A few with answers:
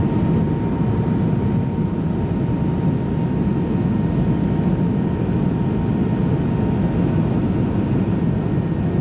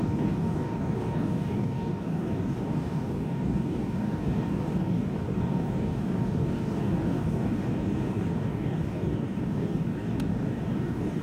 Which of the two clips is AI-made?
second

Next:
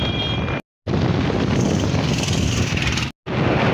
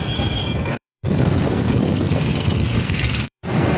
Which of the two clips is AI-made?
second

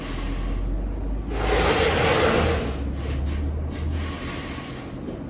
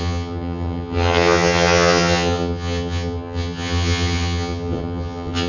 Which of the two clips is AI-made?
second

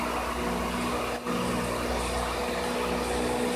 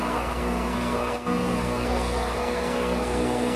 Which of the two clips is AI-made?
second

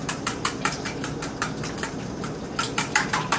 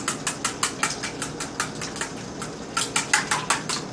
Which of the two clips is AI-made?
first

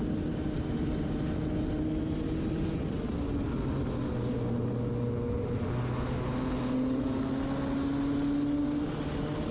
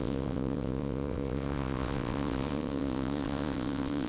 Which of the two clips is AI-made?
second